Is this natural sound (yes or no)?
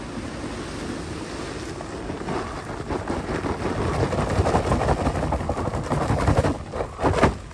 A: yes